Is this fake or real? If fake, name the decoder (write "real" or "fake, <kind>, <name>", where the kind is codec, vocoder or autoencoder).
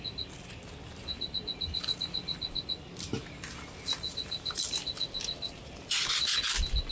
real